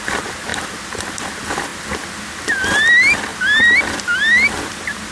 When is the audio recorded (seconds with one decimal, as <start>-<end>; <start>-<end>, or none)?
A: 0.0-5.1